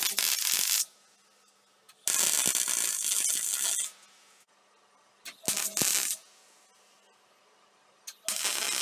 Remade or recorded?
recorded